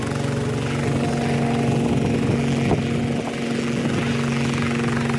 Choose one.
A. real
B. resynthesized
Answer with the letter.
A